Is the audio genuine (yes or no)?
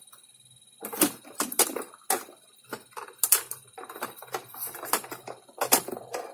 yes